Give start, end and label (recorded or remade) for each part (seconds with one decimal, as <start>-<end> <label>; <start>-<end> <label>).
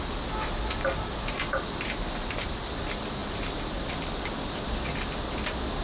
0.0-5.8 recorded